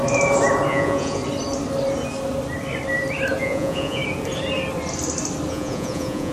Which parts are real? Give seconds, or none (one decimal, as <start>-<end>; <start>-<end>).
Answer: 0.0-0.7; 1.2-3.4; 4.0-5.5